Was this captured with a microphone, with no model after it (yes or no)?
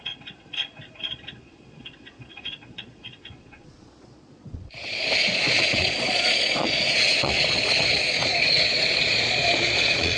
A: no